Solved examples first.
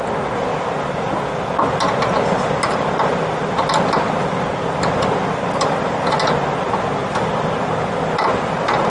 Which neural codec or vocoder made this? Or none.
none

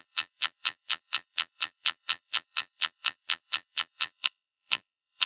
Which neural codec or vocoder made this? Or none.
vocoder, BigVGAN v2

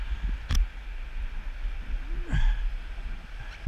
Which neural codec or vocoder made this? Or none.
none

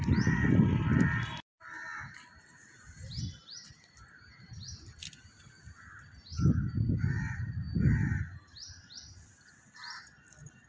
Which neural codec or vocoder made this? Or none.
none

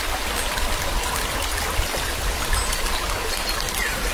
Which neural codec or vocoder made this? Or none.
none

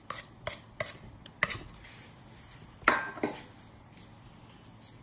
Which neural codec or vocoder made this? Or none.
none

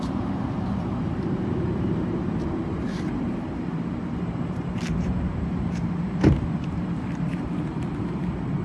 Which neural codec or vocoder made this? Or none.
vocoder, BigVGAN v2